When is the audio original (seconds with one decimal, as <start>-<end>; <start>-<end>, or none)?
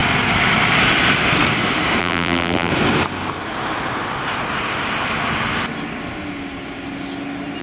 0.0-2.0; 2.7-7.6